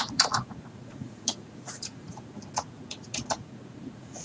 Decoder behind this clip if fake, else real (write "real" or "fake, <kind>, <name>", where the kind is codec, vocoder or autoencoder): fake, vocoder, Vocos